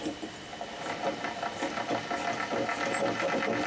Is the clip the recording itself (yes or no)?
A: yes